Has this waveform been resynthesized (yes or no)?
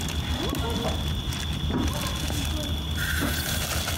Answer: no